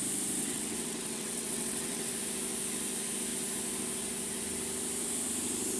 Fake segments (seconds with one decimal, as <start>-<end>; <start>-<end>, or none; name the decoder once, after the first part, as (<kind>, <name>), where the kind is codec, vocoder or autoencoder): 0.4-2.1 (vocoder, WaveNeXt)